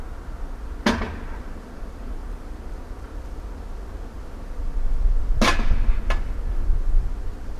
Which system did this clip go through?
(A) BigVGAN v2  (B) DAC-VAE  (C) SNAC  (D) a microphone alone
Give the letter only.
D